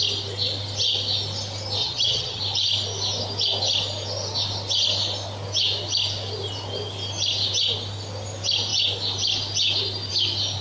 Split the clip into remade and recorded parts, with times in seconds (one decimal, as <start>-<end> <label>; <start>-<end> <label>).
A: 0.0-1.8 recorded; 1.8-2.4 remade; 2.4-10.6 recorded